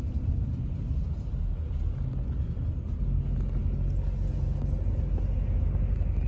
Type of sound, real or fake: real